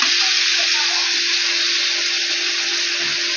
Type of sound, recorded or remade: recorded